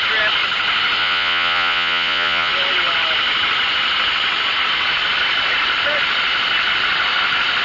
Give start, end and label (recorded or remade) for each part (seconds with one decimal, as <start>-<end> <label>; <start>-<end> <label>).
0.0-1.0 recorded; 1.0-2.5 remade; 2.5-7.6 recorded